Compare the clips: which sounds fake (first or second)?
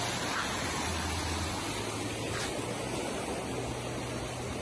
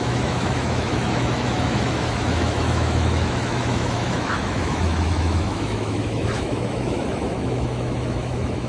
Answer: second